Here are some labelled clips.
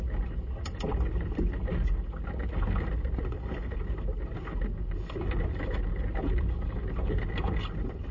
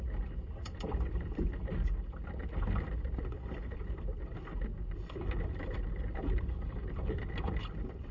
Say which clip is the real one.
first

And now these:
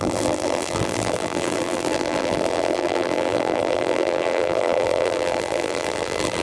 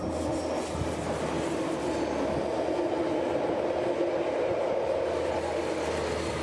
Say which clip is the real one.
second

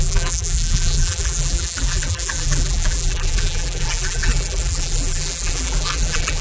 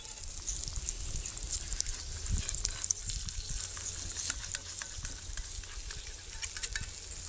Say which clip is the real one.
second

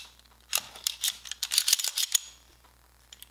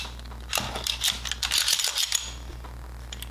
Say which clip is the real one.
second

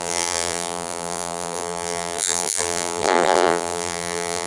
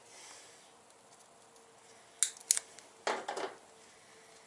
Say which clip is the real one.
second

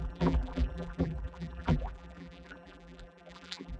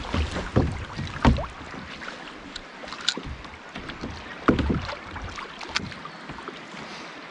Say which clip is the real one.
second